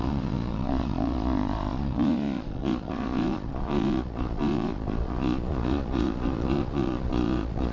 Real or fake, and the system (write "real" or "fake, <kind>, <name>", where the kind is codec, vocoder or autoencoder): fake, vocoder, Vocos